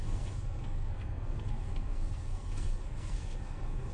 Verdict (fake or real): fake